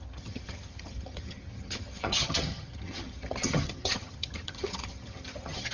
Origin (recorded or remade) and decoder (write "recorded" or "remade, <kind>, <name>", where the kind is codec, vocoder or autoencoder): remade, vocoder, HiFi-GAN